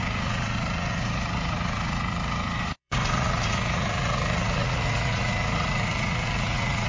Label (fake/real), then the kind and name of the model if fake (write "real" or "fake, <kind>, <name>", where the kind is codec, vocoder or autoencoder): fake, vocoder, Vocos